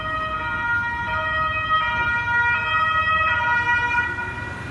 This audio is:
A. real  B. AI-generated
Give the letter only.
A